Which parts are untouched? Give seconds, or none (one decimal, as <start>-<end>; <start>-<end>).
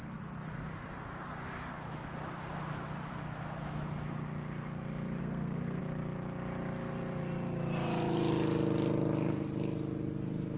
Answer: 0.0-5.2; 5.8-10.6